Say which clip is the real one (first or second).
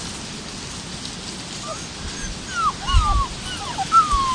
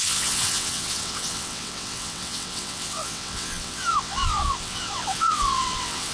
first